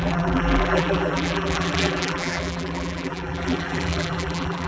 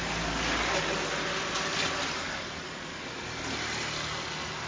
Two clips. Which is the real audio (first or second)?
second